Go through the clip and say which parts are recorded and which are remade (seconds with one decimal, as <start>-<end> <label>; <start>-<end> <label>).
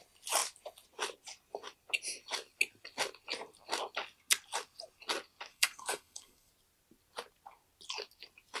0.0-5.5 recorded; 5.5-6.5 remade; 6.5-8.6 recorded